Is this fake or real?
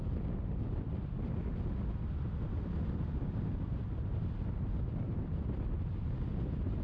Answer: real